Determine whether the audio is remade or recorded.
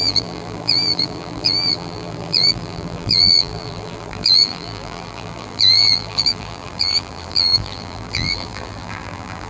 remade